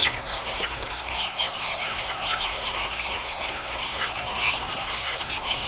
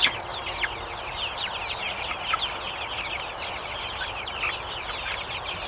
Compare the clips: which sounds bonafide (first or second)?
second